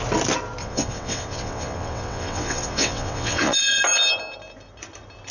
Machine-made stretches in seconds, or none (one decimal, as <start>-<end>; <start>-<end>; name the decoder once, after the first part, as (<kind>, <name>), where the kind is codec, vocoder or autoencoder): 0.6-3.8 (vocoder, WaveNeXt)